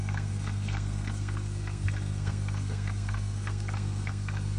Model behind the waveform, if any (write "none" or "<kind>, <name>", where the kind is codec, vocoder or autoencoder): codec, SNAC